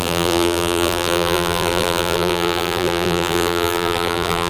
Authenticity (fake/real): fake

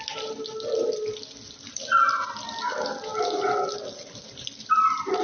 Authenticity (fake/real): real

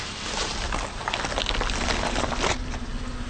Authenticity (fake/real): real